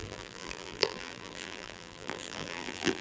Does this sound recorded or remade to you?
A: remade